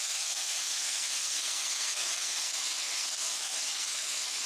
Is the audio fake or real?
fake